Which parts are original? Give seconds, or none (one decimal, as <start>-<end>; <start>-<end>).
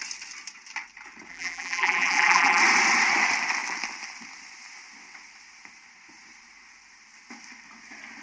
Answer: 0.0-1.3; 2.6-8.2